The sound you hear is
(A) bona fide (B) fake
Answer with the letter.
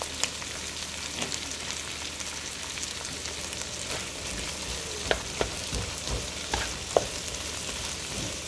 A